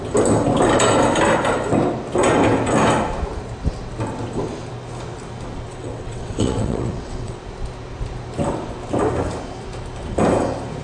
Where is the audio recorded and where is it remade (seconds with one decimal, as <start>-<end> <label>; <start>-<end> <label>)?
0.0-5.7 recorded; 5.7-7.4 remade; 7.4-10.8 recorded